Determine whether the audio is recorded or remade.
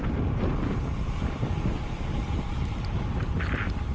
recorded